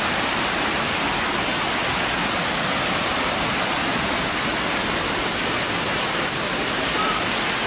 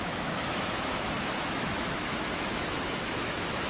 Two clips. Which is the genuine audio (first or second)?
first